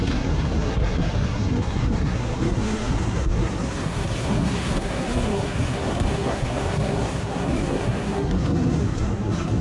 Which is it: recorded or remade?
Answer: remade